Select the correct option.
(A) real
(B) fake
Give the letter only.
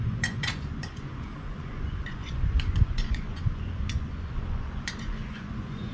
B